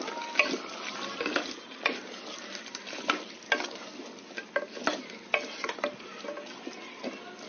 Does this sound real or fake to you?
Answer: real